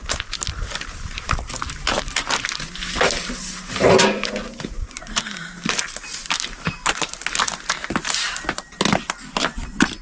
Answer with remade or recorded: recorded